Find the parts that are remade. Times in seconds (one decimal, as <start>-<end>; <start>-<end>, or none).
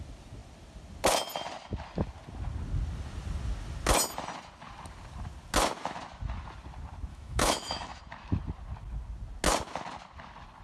7.1-8.0